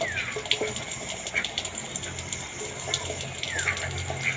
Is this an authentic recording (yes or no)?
yes